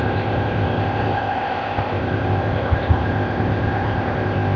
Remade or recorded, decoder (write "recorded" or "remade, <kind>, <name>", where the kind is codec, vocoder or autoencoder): remade, codec, ZipCodec